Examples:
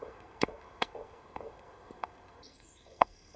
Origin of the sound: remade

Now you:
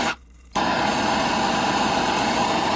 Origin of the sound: recorded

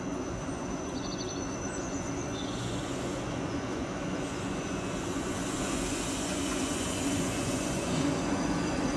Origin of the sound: remade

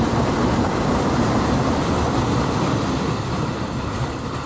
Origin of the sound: remade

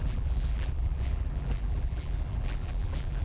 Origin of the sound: remade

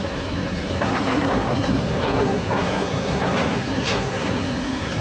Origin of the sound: remade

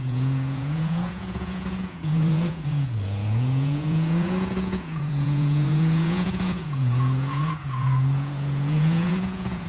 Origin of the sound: remade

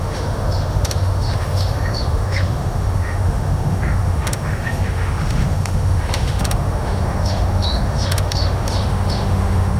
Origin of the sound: remade